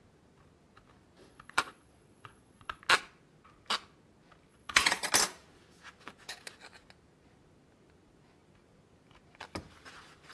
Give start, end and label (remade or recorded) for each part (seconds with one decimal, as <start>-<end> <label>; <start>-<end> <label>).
0.0-1.2 recorded; 1.2-2.8 remade; 2.8-4.5 recorded; 4.5-5.1 remade; 5.1-10.3 recorded

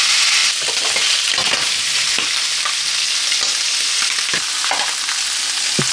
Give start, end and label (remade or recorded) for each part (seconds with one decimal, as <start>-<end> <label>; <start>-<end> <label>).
0.0-5.9 recorded

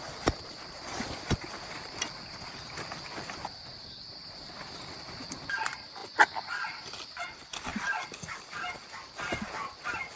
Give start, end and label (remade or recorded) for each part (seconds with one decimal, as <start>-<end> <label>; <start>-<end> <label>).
0.0-10.2 recorded

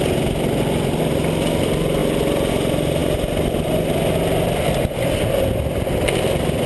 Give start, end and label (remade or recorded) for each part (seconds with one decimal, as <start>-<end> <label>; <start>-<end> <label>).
0.0-6.7 recorded

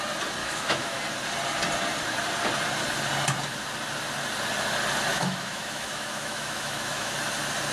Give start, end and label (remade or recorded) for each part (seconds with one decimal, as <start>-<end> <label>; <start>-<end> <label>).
0.0-0.4 recorded; 0.4-1.0 remade; 1.0-5.1 recorded; 5.1-7.1 remade; 7.1-7.7 recorded

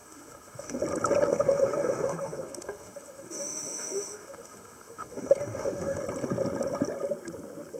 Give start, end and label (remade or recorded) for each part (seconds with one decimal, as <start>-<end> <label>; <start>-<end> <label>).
0.0-0.8 remade; 0.8-1.3 recorded; 1.3-6.0 remade; 6.0-7.8 recorded

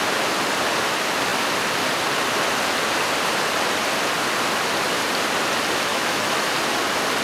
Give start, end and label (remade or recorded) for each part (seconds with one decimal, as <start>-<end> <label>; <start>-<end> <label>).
0.0-5.9 recorded; 5.9-6.5 remade; 6.5-7.2 recorded